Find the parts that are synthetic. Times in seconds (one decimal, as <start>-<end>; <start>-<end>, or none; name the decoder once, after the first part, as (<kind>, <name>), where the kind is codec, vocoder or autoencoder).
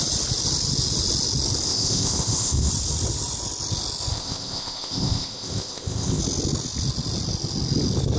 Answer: 1.7-2.7 (codec, ZipCodec); 4.1-6.2